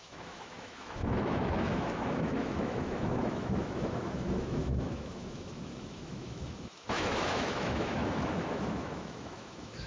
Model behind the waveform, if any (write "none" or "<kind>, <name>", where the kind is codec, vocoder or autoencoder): autoencoder, DAC-VAE